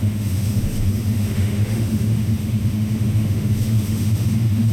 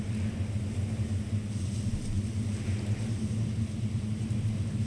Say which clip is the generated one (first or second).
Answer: first